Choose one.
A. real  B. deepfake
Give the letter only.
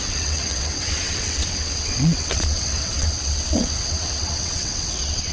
B